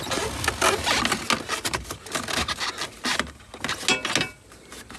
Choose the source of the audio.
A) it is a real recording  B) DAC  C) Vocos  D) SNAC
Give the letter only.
A